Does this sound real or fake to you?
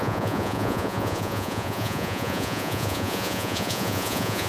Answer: fake